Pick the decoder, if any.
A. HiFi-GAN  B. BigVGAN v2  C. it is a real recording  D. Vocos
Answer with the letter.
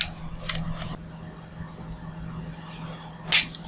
C